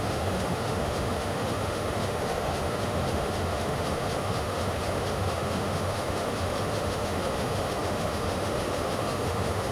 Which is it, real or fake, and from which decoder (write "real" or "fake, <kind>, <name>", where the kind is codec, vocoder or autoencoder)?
fake, autoencoder, DAC-VAE